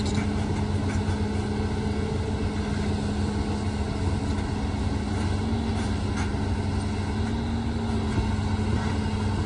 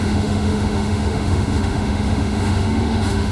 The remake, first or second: second